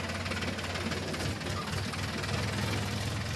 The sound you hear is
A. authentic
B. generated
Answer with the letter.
A